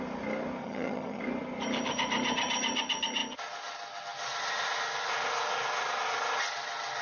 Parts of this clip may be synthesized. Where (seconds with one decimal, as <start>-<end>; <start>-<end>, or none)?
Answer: 0.6-1.2